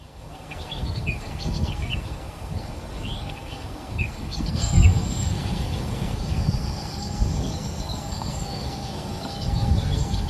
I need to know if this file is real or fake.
fake